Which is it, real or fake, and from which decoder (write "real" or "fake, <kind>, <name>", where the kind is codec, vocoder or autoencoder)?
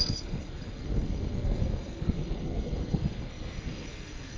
fake, codec, SNAC